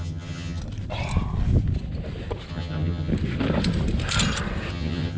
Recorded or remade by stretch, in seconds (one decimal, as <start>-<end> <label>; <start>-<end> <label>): 0.0-0.6 remade; 0.6-2.5 recorded; 2.5-3.1 remade; 3.1-4.7 recorded; 4.7-5.2 remade